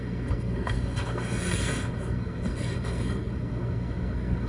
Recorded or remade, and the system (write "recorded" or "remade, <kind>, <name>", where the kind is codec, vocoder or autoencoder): remade, codec, SNAC